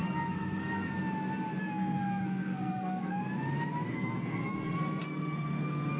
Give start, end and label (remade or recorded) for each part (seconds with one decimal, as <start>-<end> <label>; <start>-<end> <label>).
0.0-0.9 remade; 0.9-1.6 recorded; 1.6-3.2 remade; 3.2-3.9 recorded; 3.9-6.0 remade